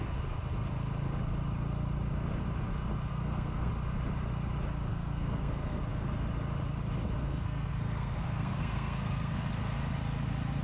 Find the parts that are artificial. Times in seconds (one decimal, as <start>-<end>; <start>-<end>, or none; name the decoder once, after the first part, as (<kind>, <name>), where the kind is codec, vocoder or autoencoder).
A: 3.1-3.7 (codec, SNAC); 4.9-5.8; 7.2-9.5